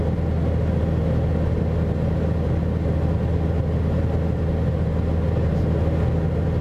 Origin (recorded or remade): recorded